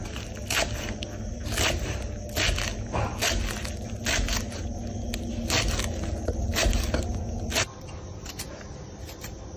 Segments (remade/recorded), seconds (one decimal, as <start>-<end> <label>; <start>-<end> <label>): 0.0-9.6 recorded